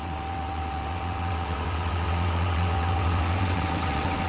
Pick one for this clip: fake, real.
fake